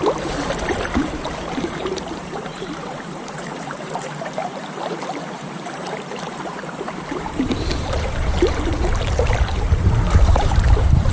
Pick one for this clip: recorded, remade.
remade